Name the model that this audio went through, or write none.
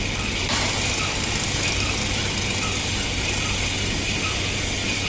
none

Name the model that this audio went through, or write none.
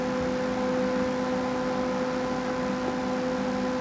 none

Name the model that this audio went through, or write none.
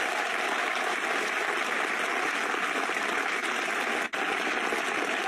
none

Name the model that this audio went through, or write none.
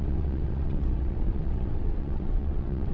vocoder, WaveNeXt